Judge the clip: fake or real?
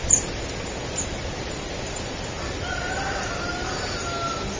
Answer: real